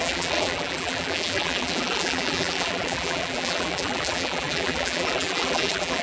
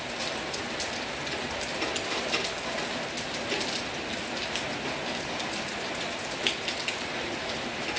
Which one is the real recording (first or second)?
second